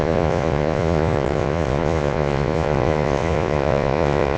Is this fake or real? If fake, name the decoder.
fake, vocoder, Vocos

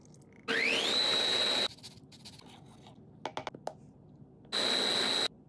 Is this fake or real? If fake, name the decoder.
real